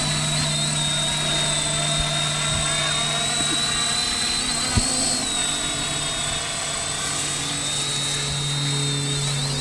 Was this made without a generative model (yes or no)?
yes